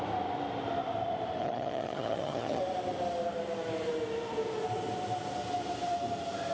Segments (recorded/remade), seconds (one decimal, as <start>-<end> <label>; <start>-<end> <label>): 0.0-1.4 recorded; 1.4-2.6 remade; 2.6-6.5 recorded